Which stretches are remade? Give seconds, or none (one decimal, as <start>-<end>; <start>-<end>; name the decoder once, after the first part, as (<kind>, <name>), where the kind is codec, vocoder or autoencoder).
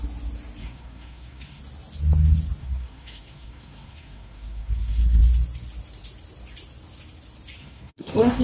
0.6-1.6 (codec, SNAC); 2.6-5.2; 7.6-8.4